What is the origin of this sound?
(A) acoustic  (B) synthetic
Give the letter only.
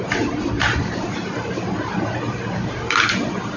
B